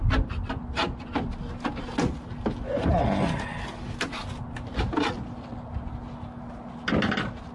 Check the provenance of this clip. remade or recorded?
recorded